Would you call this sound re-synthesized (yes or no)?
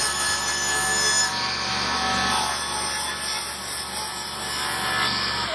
no